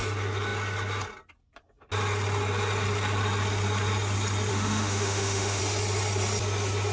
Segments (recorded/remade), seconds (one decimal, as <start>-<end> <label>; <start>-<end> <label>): 0.0-4.5 recorded; 4.5-5.6 remade; 5.6-6.9 recorded